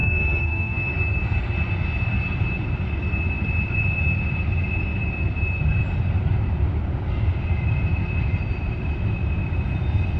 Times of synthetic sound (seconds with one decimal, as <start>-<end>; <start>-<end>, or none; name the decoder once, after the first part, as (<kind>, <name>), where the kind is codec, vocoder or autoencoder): 0.0-0.8 (codec, SNAC)